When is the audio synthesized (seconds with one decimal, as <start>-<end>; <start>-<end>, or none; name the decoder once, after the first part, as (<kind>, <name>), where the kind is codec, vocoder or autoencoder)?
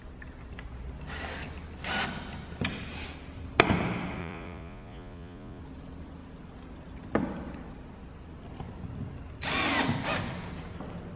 4.2-5.6 (vocoder, Vocos)